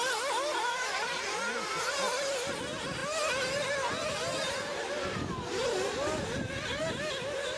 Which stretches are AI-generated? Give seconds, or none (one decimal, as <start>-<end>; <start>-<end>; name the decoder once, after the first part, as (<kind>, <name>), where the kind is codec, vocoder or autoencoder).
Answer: none